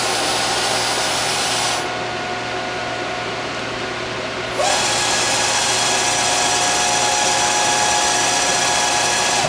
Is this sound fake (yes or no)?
no